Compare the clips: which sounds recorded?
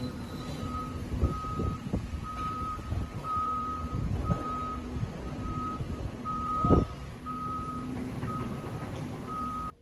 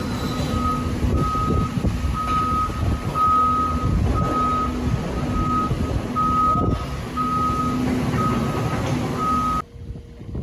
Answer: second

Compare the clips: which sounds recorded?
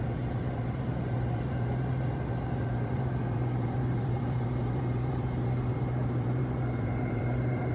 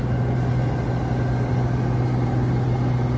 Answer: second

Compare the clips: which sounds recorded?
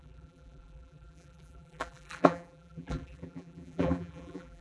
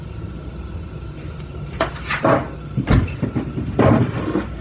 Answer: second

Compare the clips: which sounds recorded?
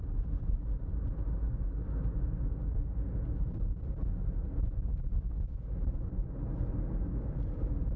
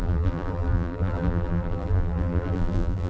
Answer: first